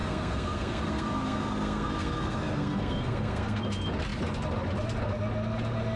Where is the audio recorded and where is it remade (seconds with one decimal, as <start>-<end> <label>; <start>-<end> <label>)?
0.0-3.6 remade; 3.6-6.0 recorded